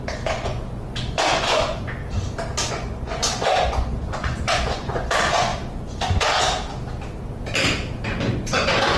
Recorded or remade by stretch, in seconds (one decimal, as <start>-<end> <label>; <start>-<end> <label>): 0.0-2.0 remade; 2.0-2.7 recorded; 2.7-5.5 remade; 5.5-8.0 recorded; 8.0-9.0 remade